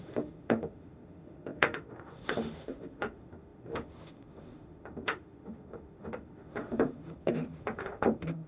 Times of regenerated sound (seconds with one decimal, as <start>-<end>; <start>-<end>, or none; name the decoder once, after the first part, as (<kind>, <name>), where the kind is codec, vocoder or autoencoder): 0.0-8.5 (autoencoder, DAC-VAE)